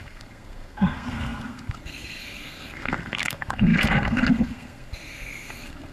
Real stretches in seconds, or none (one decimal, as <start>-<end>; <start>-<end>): none